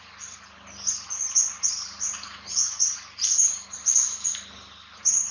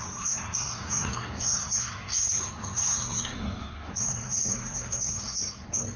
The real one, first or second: first